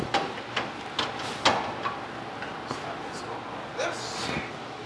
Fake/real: real